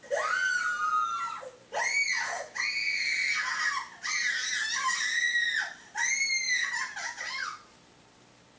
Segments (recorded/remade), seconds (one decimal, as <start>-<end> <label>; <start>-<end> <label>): 0.0-7.0 recorded; 7.0-7.7 remade; 7.7-8.6 recorded